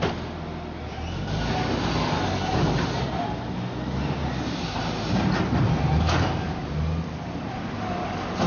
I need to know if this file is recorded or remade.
recorded